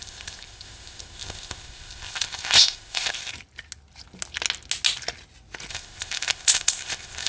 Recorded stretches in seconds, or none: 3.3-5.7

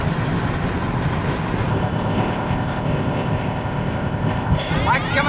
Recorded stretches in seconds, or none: 0.0-1.7; 4.7-5.3

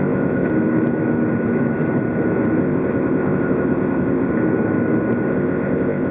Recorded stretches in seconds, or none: 0.5-2.6; 4.3-5.3